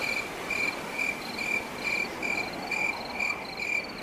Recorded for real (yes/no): yes